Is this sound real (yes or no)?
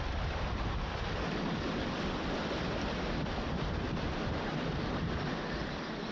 yes